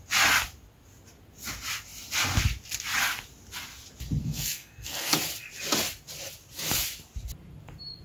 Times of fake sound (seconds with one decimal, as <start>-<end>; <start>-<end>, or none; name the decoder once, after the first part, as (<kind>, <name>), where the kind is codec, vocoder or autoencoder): 4.2-5.2 (codec, SNAC)